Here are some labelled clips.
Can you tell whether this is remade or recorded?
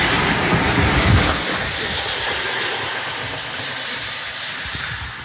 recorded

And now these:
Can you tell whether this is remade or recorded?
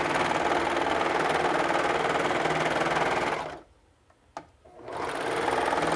recorded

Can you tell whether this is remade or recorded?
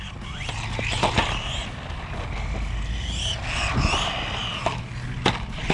recorded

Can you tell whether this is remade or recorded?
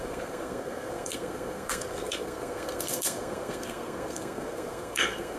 remade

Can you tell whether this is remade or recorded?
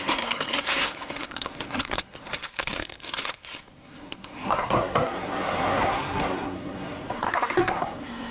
remade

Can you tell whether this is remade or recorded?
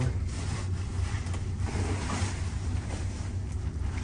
recorded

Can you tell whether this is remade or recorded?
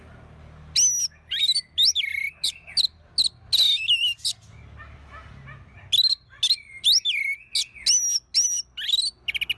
recorded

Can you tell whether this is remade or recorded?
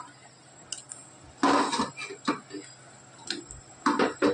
recorded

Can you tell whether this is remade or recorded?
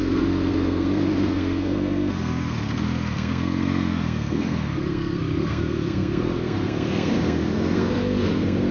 remade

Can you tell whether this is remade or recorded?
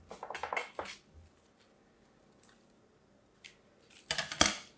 recorded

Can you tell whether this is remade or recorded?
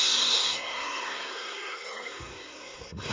remade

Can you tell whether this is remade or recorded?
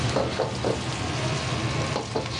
recorded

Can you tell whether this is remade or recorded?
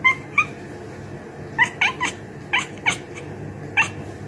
recorded